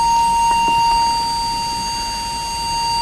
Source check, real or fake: real